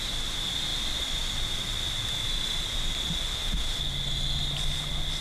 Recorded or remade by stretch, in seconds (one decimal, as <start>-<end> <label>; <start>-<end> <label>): 0.0-3.3 recorded; 3.3-3.8 remade; 3.8-5.2 recorded